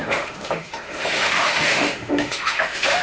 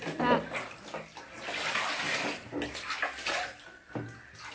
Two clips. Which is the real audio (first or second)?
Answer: second